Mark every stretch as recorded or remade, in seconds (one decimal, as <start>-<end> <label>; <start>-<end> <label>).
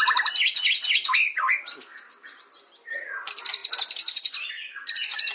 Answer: 0.0-5.3 recorded